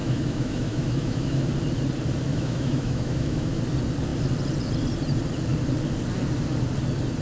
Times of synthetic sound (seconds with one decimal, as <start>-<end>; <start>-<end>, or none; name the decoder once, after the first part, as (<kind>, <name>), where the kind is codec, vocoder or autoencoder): 0.0-1.5 (autoencoder, DAC-VAE); 2.3-3.6